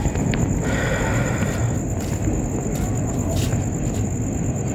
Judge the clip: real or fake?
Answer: real